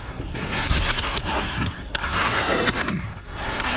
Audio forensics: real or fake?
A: fake